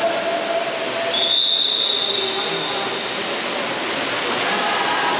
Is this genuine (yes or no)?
yes